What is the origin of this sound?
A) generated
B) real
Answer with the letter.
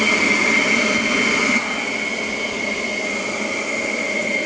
B